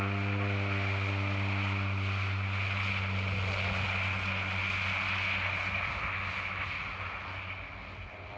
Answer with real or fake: real